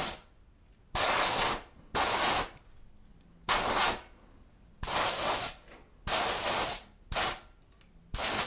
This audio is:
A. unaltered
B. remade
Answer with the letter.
A